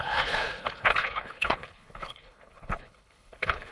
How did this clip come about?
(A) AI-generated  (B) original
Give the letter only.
A